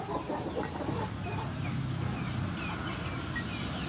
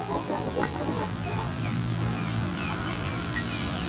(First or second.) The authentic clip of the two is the first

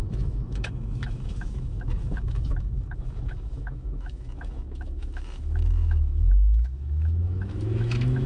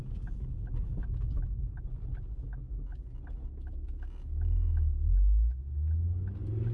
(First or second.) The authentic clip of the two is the second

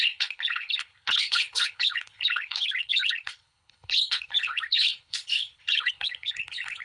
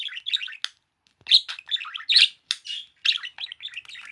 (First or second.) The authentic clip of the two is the second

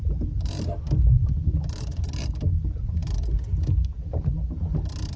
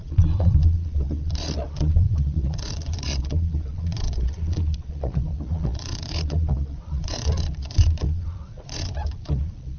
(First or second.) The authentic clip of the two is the first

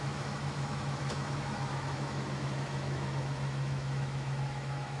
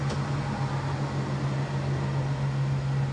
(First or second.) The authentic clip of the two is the second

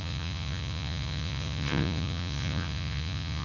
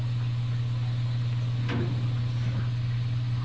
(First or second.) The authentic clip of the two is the second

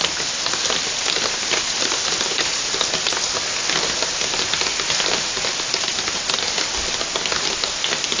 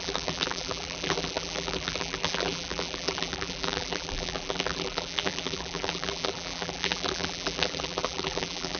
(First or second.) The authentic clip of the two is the first